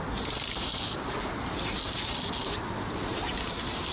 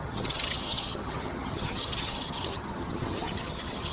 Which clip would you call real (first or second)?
first